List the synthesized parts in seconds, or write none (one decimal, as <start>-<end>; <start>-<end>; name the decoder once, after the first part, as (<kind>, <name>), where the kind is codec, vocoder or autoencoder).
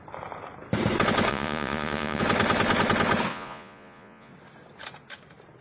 1.3-2.2 (vocoder, Vocos); 3.3-4.3